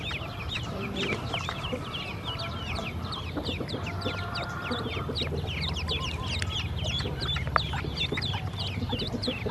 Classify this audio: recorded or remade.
remade